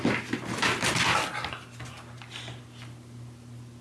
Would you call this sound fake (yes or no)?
no